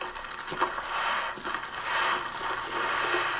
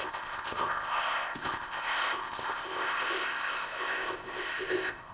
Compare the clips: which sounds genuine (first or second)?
first